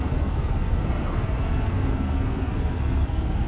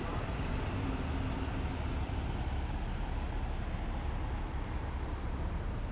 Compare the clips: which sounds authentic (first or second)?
second